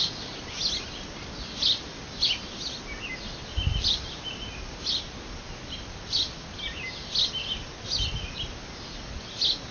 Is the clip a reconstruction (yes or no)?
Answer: no